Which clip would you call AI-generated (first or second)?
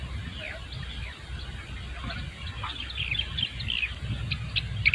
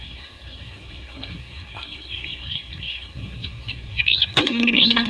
second